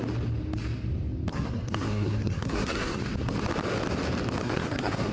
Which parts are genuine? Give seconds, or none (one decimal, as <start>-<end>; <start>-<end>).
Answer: 0.0-1.3; 3.0-4.4